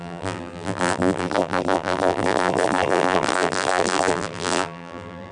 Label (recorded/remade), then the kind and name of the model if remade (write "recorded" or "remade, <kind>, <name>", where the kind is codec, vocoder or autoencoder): remade, vocoder, BigVGAN v2